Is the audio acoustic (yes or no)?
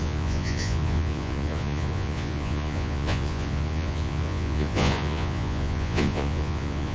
no